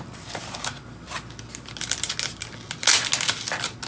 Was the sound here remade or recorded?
recorded